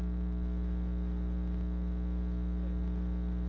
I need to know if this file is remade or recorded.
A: recorded